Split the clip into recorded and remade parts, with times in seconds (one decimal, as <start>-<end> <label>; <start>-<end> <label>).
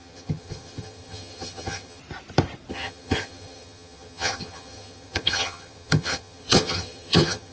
0.0-2.0 remade; 2.0-2.7 recorded; 2.7-7.5 remade